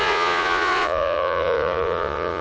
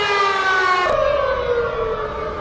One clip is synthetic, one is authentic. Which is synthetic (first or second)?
first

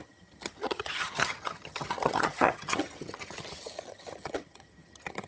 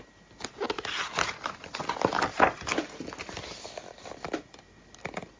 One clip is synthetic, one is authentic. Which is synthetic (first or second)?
first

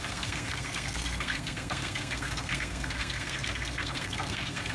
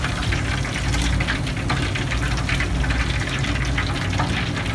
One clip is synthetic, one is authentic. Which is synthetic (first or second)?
first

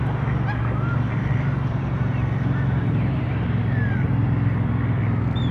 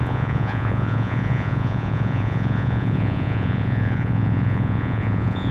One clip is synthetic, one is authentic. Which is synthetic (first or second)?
second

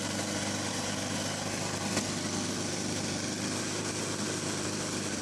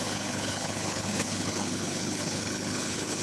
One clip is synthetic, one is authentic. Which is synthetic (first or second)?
second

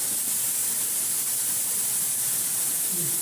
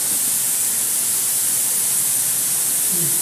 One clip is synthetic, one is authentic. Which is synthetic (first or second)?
first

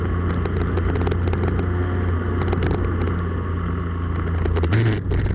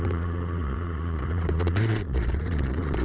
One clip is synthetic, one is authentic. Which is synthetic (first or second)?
second